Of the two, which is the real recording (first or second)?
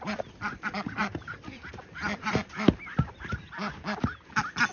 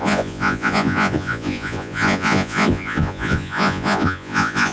first